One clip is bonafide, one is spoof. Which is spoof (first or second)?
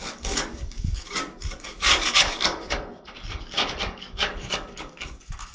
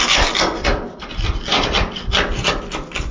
first